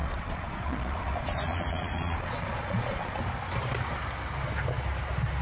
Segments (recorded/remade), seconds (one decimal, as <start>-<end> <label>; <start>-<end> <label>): 0.0-3.2 remade; 3.2-5.4 recorded